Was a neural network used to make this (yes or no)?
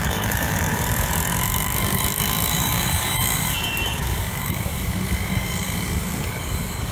yes